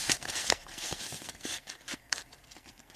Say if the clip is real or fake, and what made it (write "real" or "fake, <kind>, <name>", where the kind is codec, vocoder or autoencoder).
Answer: fake, codec, SNAC